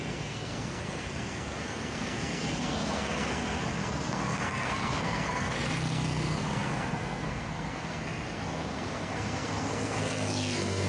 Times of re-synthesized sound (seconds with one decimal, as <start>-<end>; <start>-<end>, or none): 0.0-10.9